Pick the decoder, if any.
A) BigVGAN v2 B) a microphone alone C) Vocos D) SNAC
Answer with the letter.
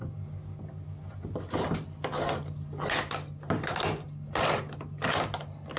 B